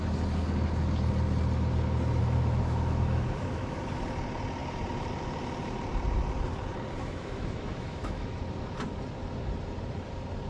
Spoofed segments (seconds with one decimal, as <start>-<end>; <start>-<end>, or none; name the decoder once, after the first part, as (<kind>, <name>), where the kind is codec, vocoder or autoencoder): 2.2-3.8 (autoencoder, DAC-VAE); 7.0-8.4